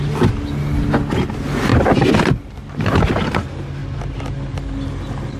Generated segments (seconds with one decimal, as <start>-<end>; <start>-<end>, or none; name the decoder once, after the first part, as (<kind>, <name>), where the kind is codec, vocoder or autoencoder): 3.8-4.9 (vocoder, BigVGAN v2)